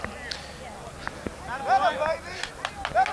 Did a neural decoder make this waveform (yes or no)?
no